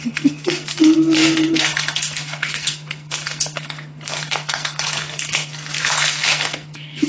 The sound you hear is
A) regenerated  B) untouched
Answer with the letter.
A